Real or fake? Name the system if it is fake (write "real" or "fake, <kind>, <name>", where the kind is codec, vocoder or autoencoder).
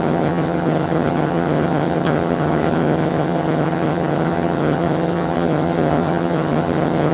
fake, vocoder, HiFi-GAN